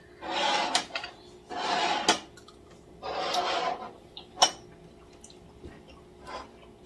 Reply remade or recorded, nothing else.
recorded